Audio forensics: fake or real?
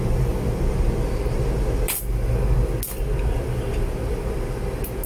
real